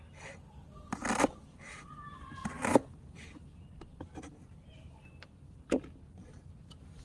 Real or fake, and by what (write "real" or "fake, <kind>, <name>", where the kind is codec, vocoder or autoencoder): real